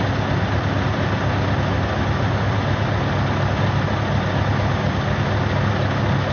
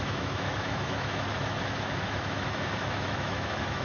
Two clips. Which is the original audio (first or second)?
first